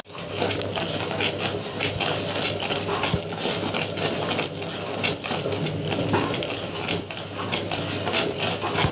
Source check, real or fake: real